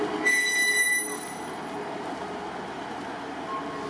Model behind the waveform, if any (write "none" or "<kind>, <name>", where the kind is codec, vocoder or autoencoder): none